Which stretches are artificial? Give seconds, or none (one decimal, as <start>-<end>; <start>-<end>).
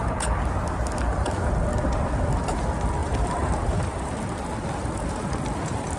3.0-4.1